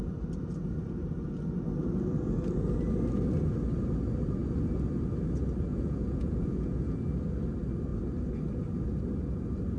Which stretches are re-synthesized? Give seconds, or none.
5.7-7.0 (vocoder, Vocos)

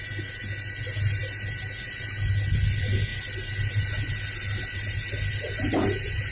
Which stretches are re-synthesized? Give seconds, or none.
none